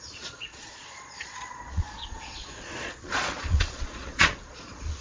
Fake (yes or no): yes